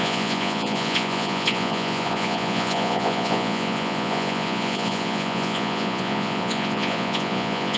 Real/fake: fake